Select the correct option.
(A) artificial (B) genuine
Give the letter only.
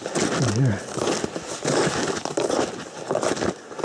B